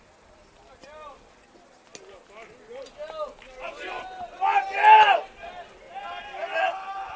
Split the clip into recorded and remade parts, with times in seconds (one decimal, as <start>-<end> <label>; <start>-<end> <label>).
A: 0.0-7.2 recorded